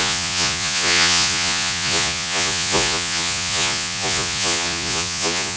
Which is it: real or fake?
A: fake